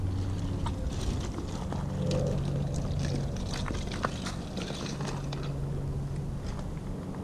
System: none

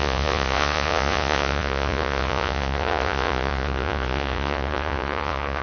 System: vocoder, Vocos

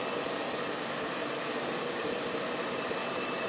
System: vocoder, BigVGAN v2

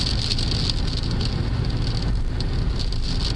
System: none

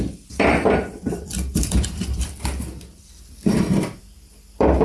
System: vocoder, BigVGAN v2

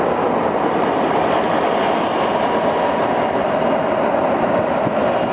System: none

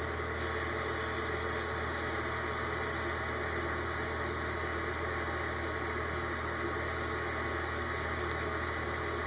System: none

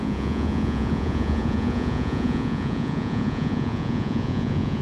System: vocoder, Vocos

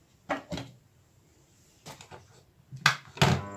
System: none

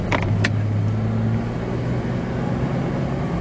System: none